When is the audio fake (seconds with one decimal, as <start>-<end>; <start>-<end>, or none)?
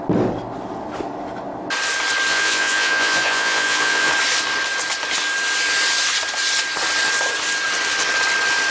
2.3-4.1